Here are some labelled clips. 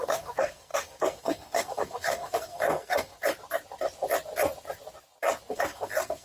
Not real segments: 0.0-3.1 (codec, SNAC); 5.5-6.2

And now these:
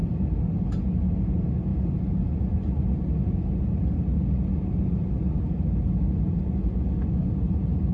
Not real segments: none

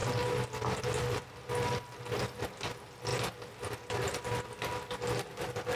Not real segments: none

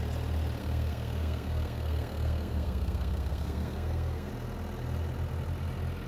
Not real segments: 0.6-4.3 (codec, SNAC)

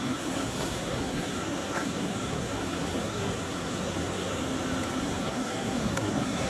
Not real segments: 0.0-4.4 (codec, SNAC); 4.9-6.5

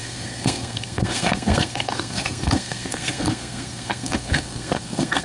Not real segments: 0.0-5.2 (codec, SNAC)

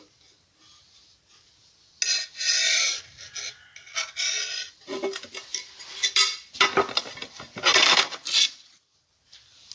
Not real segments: none